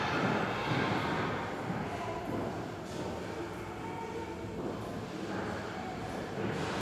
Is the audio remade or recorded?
recorded